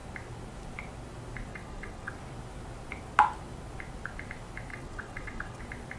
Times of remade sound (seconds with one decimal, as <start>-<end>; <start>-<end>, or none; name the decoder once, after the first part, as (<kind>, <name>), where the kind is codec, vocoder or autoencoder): 1.5-2.1 (vocoder, WaveNeXt); 4.7-5.6